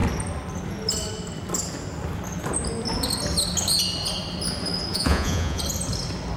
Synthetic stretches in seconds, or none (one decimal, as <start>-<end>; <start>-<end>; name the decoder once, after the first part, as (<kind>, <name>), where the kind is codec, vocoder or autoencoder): 4.9-5.6 (vocoder, Vocos)